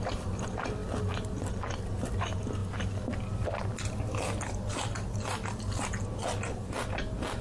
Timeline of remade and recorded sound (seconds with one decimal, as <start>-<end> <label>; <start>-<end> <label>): 0.0-7.4 recorded